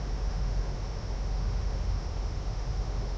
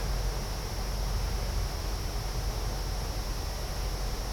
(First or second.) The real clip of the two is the second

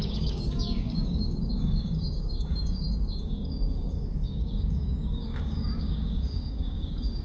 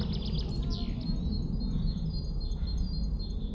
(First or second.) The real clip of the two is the second